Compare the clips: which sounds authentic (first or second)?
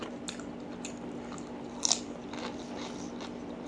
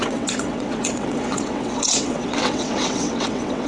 first